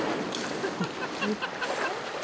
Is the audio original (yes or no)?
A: yes